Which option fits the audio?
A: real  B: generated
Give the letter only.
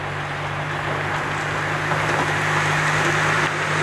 A